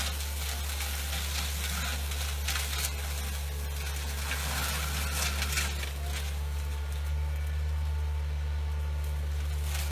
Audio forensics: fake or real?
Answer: real